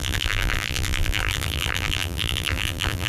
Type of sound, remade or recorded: remade